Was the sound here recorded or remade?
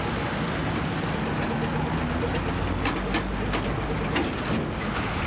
recorded